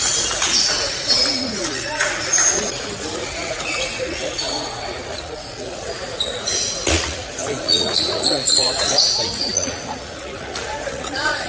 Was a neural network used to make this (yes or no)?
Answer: yes